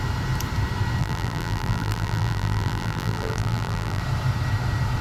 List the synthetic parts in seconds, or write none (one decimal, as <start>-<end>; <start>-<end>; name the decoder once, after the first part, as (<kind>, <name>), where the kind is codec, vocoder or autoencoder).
1.0-4.0 (vocoder, BigVGAN v2)